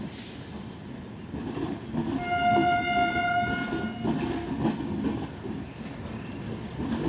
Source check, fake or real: real